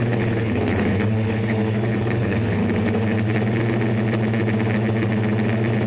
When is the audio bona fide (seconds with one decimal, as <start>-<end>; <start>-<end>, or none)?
2.6-5.9